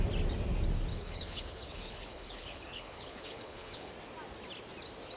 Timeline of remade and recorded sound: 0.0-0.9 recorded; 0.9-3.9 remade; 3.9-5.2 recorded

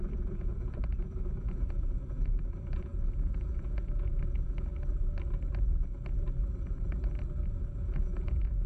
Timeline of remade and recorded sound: 0.0-4.7 remade; 4.7-7.8 recorded; 7.8-8.7 remade

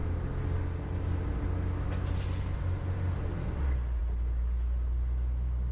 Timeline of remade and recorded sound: 0.0-5.7 recorded

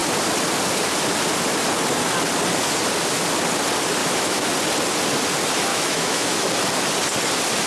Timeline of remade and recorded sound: 0.0-4.0 recorded; 4.0-4.5 remade; 4.5-5.7 recorded; 5.7-6.5 remade; 6.5-7.7 recorded

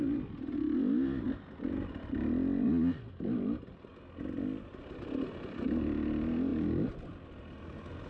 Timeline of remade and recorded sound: 0.0-8.1 recorded

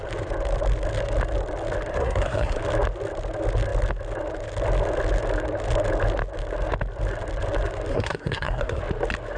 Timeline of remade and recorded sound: 0.0-1.9 recorded; 1.9-2.6 remade; 2.6-7.9 recorded; 7.9-8.8 remade; 8.8-9.4 recorded

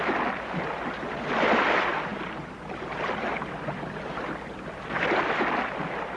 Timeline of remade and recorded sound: 0.0-6.2 recorded